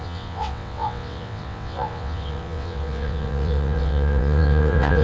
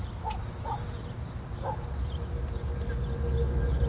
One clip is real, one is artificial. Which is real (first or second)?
second